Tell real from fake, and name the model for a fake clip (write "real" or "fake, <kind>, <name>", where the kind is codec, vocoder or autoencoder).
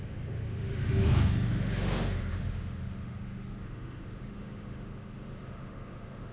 fake, autoencoder, DAC-VAE